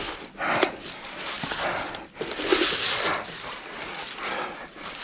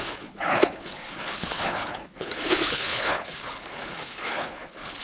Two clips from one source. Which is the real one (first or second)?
first